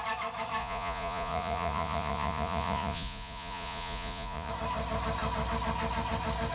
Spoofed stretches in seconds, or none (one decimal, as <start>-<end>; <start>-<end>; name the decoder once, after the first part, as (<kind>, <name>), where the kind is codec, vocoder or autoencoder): 0.6-4.5 (vocoder, Vocos)